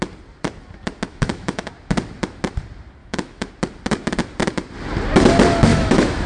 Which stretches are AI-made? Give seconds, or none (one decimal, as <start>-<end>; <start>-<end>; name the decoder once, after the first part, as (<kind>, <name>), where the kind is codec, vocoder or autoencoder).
1.1-1.7 (autoencoder, DAC-VAE); 3.0-3.5; 5.7-6.3